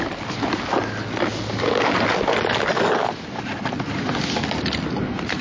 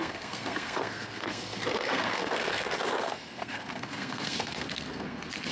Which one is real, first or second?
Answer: first